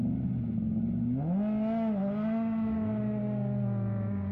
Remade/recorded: recorded